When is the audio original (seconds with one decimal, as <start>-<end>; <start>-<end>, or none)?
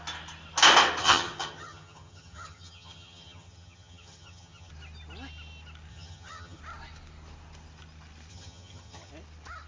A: 0.0-1.0; 4.7-5.9; 6.6-8.3; 9.1-9.7